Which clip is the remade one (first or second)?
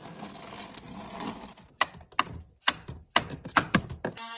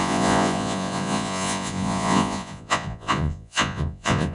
second